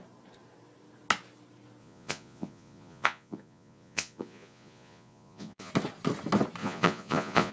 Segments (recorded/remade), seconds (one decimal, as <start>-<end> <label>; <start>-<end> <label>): 0.0-1.8 recorded; 1.8-5.7 remade; 5.7-6.6 recorded; 6.6-7.5 remade